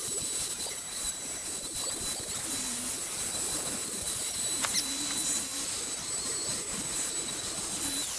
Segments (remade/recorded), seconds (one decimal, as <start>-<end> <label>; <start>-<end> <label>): 0.0-8.2 recorded